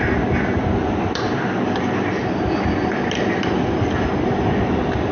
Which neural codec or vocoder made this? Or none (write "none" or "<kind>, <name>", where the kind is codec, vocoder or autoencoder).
none